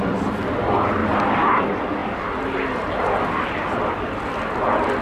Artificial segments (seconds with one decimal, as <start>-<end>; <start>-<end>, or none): 1.0-1.6